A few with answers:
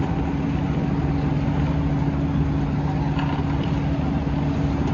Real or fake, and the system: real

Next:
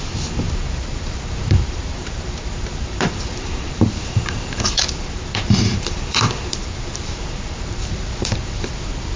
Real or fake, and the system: fake, vocoder, BigVGAN v2